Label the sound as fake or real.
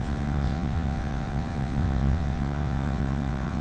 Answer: fake